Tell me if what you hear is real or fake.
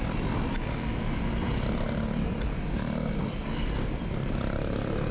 real